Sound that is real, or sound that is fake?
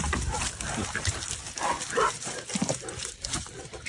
real